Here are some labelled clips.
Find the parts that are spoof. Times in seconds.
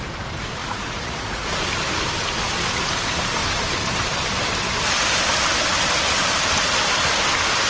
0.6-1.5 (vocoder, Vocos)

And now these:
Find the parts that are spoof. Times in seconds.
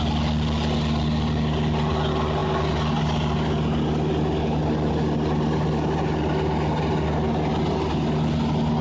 none